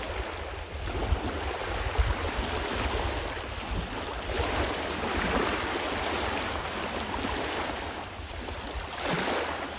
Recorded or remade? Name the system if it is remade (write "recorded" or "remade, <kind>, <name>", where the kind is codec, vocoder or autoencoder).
recorded